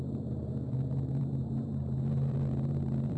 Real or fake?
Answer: fake